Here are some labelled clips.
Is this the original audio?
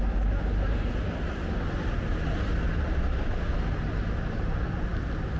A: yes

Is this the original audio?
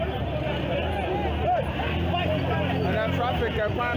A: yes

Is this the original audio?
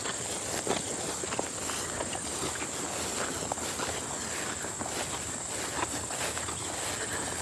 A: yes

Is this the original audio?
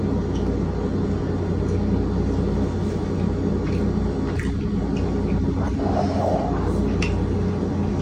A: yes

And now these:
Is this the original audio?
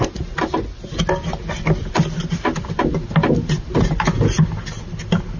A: yes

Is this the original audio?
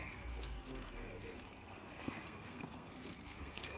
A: no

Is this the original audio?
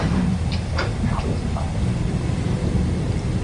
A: yes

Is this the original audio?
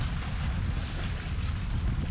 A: yes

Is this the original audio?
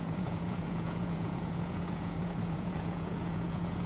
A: no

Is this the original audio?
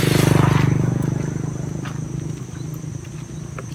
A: yes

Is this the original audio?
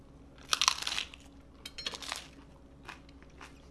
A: yes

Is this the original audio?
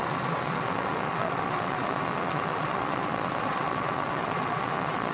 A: no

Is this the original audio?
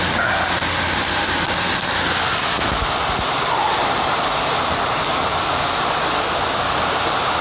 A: yes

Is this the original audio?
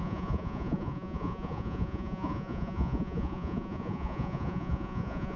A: no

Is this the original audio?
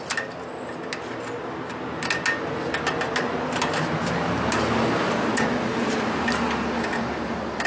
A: yes